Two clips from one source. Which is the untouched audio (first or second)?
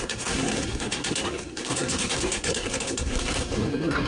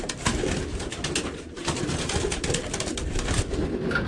second